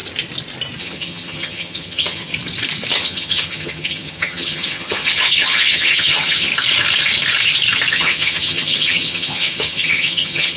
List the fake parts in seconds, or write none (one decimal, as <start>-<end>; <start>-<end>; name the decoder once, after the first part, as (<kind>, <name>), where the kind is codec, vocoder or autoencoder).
0.8-2.3 (vocoder, HiFi-GAN); 2.9-6.5; 7.9-10.6

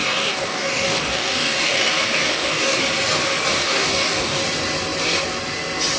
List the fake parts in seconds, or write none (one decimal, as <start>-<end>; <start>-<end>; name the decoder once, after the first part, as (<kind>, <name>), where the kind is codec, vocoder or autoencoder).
0.0-2.8 (codec, DAC); 3.6-4.4

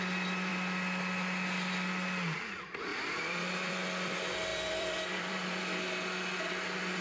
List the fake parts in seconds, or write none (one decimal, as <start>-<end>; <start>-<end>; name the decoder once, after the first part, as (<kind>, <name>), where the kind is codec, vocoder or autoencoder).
2.9-3.7 (vocoder, BigVGAN v2); 4.5-5.6

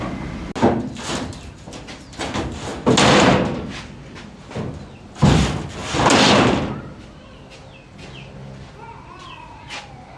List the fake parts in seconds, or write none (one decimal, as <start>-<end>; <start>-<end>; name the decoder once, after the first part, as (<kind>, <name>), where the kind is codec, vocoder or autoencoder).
none

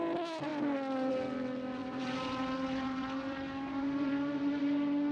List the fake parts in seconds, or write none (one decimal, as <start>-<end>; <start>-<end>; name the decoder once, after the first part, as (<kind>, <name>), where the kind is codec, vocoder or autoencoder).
1.8-4.6 (vocoder, BigVGAN v2)

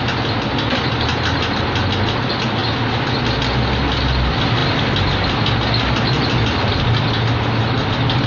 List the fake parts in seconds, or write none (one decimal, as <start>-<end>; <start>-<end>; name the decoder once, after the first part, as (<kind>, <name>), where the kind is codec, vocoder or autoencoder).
none

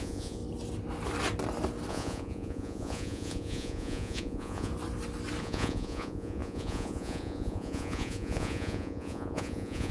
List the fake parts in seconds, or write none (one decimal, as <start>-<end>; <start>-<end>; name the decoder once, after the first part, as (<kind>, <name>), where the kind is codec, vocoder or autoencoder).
0.0-0.4 (vocoder, Vocos); 1.9-4.7; 5.4-9.9